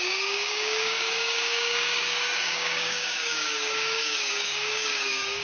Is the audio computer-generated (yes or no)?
yes